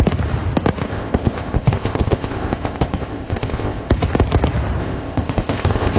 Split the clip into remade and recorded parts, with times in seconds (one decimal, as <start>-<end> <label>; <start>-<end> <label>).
0.0-0.8 recorded; 0.8-3.9 remade; 3.9-4.8 recorded; 4.8-6.0 remade